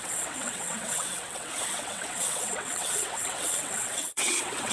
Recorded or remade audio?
remade